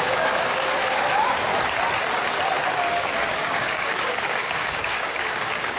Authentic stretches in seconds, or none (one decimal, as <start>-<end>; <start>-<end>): 1.5-2.7